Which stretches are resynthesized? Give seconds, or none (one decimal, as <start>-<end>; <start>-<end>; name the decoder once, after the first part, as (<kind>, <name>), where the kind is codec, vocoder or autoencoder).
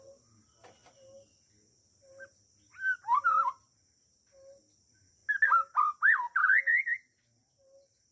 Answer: none